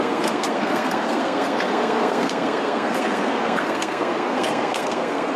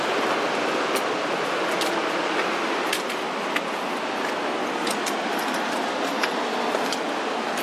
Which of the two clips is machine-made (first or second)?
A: first